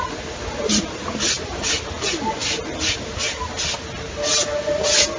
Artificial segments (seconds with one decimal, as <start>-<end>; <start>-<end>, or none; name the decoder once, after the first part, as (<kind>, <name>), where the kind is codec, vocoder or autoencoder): none